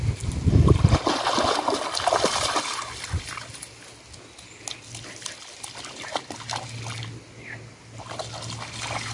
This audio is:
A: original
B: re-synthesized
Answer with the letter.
A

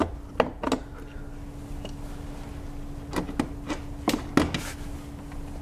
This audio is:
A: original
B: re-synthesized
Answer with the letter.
A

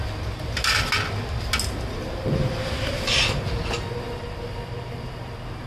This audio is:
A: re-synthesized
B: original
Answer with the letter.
B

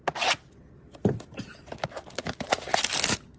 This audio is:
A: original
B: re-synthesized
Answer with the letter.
A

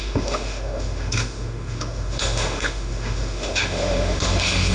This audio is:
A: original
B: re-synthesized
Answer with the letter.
B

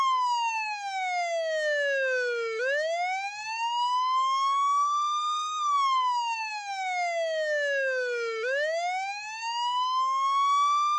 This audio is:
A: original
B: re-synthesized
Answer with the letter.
B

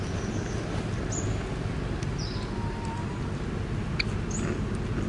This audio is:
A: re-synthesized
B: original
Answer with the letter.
B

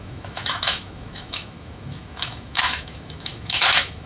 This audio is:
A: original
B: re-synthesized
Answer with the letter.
B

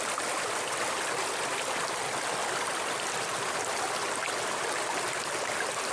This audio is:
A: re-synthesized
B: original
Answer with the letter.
B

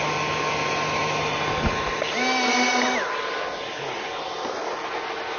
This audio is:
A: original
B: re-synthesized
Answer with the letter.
A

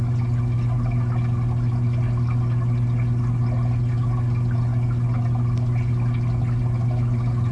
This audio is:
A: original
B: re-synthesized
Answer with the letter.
A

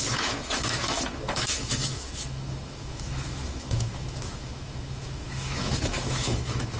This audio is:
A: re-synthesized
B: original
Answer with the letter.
A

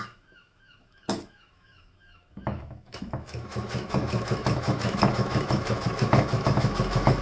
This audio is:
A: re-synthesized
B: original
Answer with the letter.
A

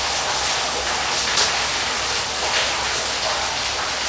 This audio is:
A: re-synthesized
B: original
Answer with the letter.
B